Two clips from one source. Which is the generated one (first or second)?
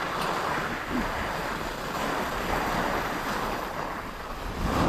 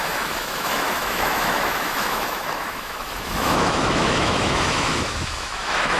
second